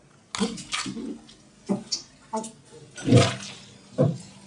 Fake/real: real